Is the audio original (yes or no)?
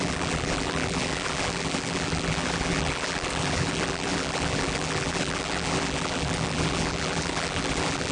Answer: no